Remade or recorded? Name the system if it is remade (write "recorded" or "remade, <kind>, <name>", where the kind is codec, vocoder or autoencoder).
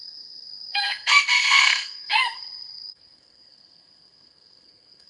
remade, codec, SNAC